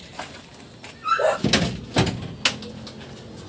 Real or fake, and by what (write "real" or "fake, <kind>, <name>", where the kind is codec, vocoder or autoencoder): real